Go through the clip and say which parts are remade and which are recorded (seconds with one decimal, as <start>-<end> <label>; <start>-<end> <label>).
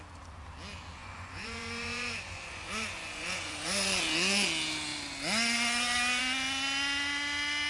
0.0-1.0 recorded; 1.0-4.0 remade; 4.0-7.7 recorded